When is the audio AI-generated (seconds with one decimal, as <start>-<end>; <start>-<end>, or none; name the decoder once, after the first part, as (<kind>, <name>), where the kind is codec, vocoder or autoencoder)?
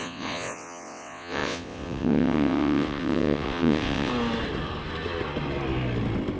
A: 0.0-4.1 (vocoder, WaveNeXt)